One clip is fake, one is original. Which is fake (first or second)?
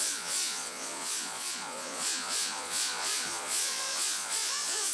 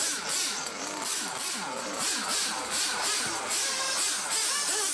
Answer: first